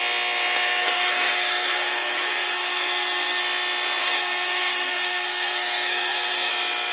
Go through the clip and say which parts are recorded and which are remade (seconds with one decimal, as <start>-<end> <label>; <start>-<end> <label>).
0.0-0.8 recorded; 0.8-3.4 remade; 3.4-4.0 recorded; 4.0-6.5 remade; 6.5-6.9 recorded